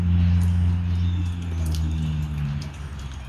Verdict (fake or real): real